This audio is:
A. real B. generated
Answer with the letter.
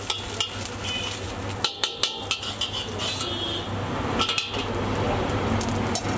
A